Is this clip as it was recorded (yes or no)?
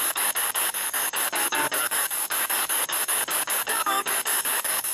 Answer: no